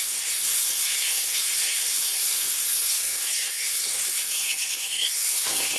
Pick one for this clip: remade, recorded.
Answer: remade